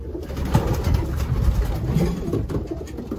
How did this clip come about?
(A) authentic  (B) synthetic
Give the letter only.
A